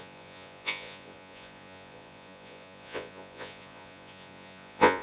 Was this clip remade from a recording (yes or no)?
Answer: yes